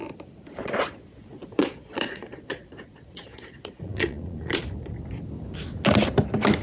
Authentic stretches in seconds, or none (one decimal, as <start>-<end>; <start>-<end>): 0.0-0.6; 4.6-6.6